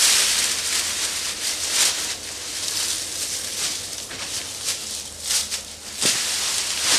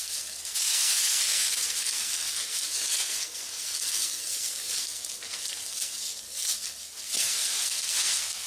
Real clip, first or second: first